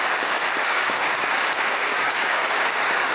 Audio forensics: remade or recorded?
remade